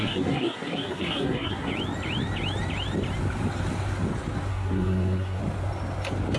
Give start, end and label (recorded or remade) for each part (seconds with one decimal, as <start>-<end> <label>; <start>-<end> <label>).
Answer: 0.0-1.7 remade; 1.7-4.5 recorded; 4.5-5.4 remade; 5.4-6.4 recorded